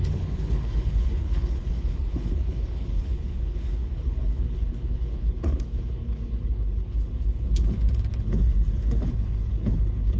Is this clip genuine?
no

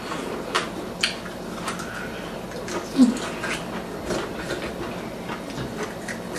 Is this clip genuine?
yes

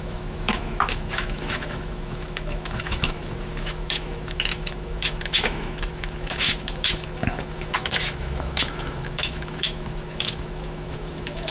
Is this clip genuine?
no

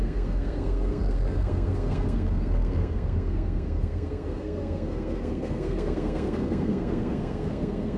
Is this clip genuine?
no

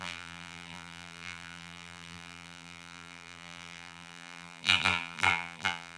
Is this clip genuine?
no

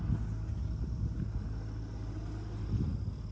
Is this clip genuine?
yes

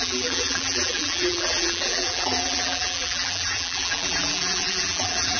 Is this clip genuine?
no